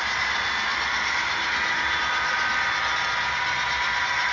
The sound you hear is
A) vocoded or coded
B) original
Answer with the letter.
B